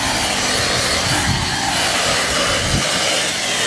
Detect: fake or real real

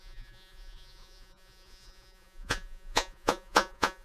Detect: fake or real fake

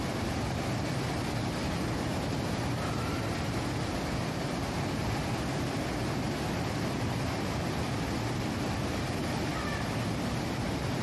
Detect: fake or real real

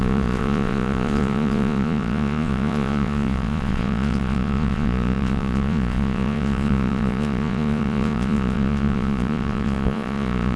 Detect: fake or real fake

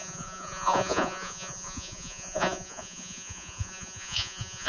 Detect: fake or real fake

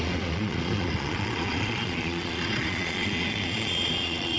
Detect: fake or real fake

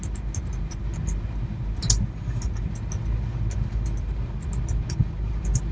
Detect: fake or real real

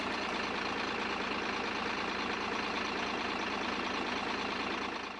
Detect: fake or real real